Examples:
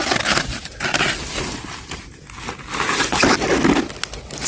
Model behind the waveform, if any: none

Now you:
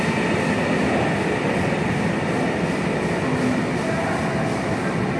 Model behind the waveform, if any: none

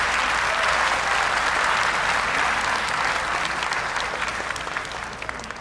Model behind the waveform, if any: none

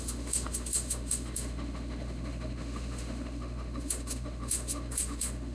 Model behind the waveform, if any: autoencoder, DAC-VAE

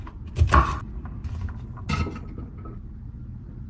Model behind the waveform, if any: none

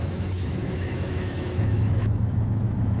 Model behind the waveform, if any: autoencoder, DAC-VAE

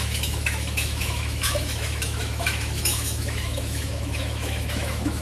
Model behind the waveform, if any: autoencoder, DAC-VAE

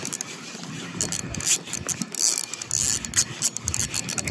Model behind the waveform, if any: none